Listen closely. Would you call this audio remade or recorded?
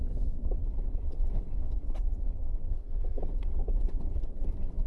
remade